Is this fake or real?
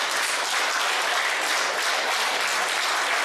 real